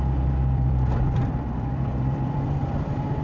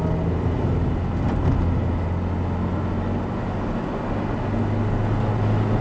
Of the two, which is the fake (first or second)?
first